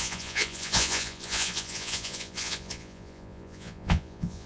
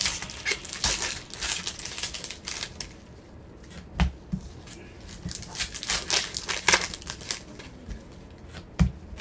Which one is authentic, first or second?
second